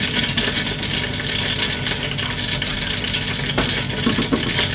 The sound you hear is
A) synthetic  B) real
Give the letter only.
B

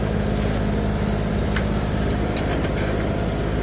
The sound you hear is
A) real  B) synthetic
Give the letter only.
B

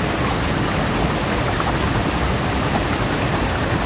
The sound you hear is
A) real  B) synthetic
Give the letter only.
A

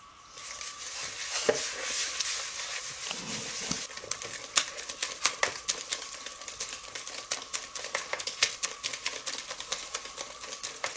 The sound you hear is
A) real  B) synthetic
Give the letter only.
A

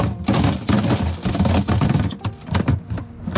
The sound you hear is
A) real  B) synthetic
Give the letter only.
A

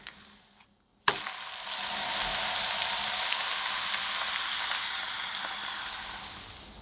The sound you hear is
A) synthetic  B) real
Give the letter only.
B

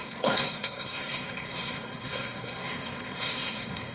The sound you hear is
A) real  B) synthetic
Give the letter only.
B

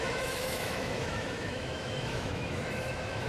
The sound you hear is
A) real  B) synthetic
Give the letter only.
B